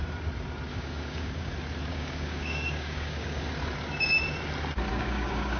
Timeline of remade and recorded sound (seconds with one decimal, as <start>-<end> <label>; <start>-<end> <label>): 0.0-0.7 recorded; 0.7-1.5 remade; 1.5-1.9 recorded; 1.9-3.4 remade; 3.4-4.9 recorded; 4.9-5.6 remade